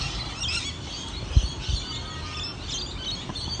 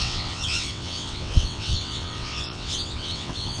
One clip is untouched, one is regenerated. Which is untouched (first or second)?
first